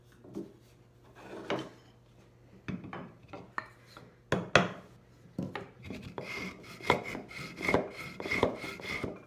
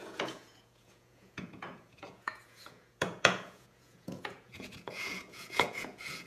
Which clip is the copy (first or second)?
second